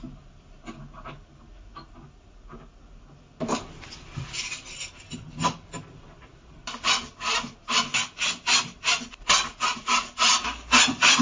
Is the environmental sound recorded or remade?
recorded